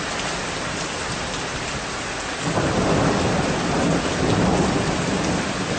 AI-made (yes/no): no